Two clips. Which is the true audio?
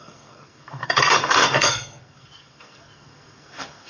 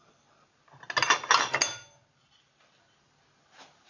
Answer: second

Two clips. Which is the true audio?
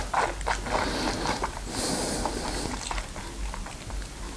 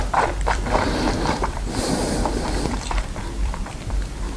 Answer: first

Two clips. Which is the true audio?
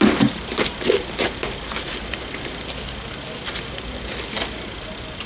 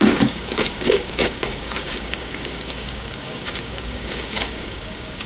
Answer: first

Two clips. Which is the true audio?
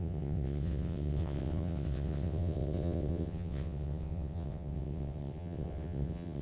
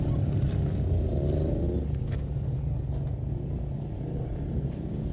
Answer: second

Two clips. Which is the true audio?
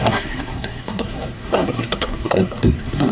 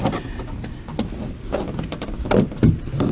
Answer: second